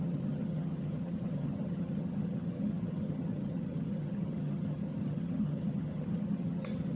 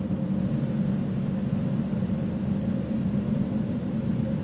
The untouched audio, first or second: second